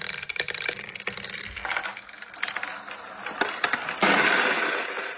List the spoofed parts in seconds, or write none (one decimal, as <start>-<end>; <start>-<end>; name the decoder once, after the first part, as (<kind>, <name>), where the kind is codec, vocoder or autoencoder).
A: none

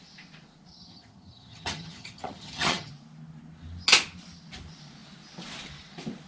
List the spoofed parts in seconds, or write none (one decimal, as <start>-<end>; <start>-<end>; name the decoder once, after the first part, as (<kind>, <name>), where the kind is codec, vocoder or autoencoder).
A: 0.7-2.9 (vocoder, HiFi-GAN)